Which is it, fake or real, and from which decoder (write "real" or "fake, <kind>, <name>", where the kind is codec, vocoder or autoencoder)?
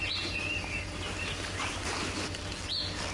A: real